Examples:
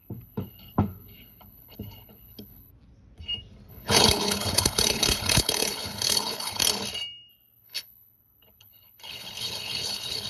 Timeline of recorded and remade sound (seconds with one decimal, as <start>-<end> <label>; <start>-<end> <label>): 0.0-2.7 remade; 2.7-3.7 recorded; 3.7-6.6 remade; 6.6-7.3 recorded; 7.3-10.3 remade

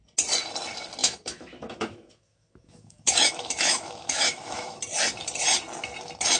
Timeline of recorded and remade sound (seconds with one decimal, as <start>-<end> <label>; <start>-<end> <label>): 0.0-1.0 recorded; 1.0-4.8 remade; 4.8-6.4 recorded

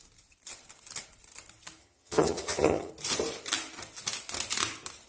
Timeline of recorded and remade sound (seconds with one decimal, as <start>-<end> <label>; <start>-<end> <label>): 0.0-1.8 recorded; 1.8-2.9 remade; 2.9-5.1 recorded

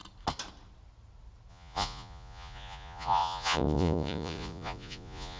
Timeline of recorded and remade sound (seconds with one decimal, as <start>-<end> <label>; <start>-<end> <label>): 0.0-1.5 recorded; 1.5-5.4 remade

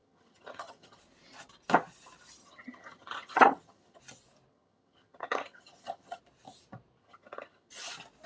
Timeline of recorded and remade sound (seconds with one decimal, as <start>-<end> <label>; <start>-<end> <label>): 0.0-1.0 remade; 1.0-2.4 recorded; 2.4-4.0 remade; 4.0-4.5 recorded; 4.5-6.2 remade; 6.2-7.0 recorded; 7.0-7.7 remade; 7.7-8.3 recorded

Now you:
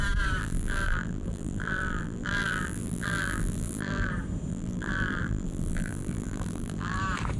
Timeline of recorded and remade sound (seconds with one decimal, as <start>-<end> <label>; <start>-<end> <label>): 0.0-0.4 recorded; 0.4-4.1 remade; 4.1-4.5 recorded; 4.5-7.0 remade; 7.0-7.4 recorded

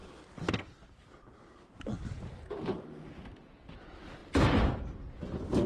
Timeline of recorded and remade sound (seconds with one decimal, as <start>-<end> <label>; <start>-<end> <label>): 0.0-5.7 recorded

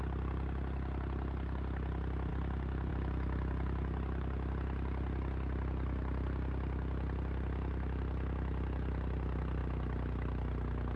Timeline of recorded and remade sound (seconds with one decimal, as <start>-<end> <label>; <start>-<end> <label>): 0.0-11.0 recorded